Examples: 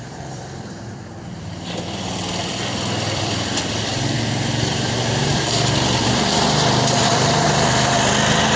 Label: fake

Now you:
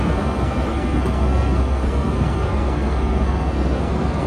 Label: fake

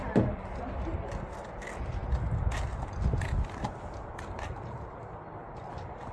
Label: real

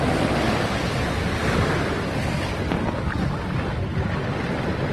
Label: real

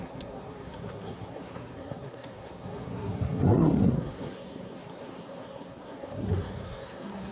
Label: fake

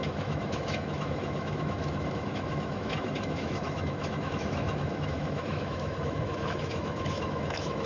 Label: fake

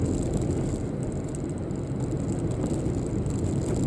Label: real